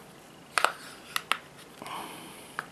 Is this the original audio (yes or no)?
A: yes